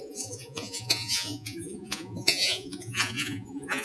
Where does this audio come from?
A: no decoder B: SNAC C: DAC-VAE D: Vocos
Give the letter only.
D